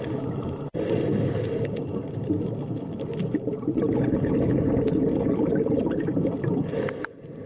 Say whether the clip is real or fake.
real